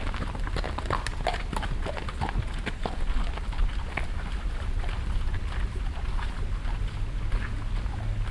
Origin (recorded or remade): recorded